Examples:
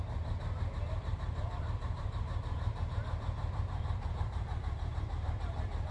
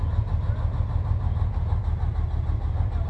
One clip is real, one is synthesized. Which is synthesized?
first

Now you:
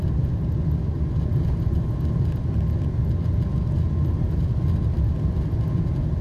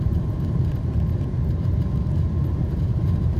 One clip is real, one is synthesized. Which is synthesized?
second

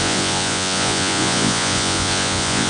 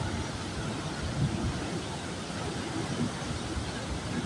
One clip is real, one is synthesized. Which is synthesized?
first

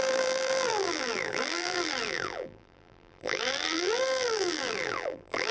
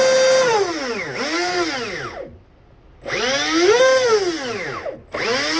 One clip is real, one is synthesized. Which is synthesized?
first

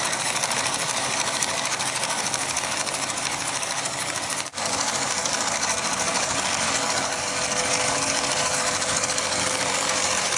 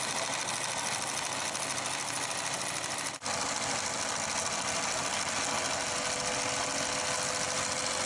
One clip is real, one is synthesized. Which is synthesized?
first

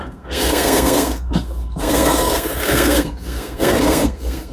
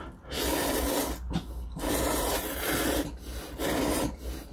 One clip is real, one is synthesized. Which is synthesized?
first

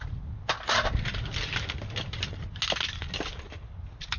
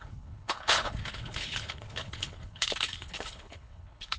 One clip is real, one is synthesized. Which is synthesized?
second